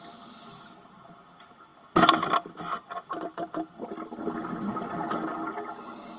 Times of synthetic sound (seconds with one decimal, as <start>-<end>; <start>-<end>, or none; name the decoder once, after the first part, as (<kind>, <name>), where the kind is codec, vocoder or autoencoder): none